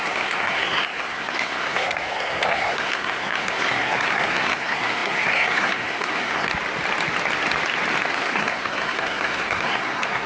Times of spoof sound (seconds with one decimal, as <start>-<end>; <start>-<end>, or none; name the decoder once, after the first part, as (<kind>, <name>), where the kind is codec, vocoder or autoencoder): 0.0-6.5 (codec, SNAC); 8.1-10.3